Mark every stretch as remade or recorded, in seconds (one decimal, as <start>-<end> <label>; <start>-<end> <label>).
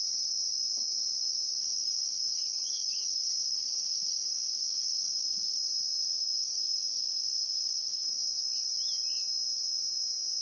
0.0-1.6 recorded; 1.6-5.6 remade; 5.6-6.1 recorded; 6.1-8.1 remade; 8.1-10.4 recorded